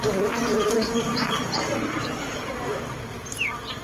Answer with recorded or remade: recorded